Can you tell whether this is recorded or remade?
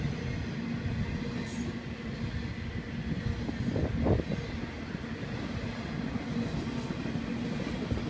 recorded